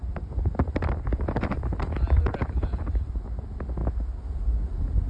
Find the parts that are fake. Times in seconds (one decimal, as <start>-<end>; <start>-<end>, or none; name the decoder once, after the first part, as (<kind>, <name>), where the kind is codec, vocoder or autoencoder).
0.0-3.1 (vocoder, BigVGAN v2)